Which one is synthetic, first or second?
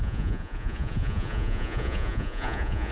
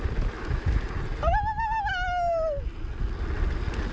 first